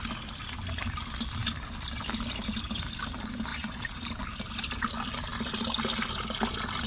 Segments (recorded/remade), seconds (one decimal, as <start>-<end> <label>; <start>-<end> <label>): 0.0-3.5 recorded; 3.5-4.2 remade; 4.2-6.9 recorded